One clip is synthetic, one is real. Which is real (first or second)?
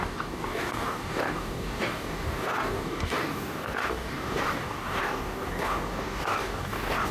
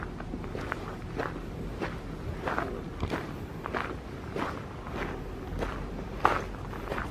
second